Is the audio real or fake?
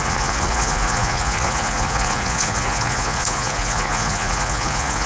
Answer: fake